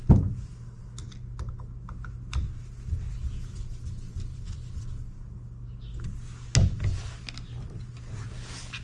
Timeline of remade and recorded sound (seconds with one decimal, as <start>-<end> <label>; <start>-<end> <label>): 0.0-4.3 recorded; 4.3-4.8 remade; 4.8-8.8 recorded